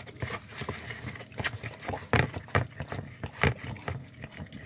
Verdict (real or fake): real